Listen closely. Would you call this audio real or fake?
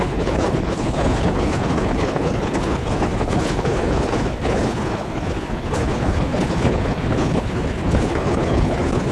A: fake